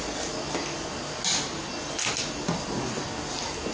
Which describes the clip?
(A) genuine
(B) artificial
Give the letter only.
A